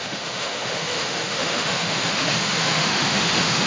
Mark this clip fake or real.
fake